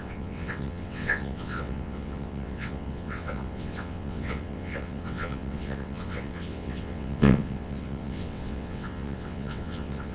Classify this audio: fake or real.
fake